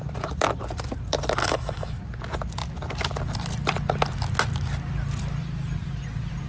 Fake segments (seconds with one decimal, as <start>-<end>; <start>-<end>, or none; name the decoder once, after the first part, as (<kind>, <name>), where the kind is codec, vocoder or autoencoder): 1.4-2.0 (autoencoder, DAC-VAE)